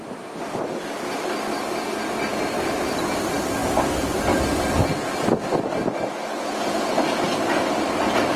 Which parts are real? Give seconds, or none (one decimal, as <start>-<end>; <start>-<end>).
0.0-8.4